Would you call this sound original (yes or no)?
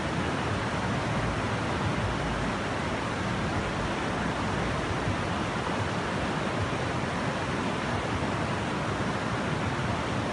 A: yes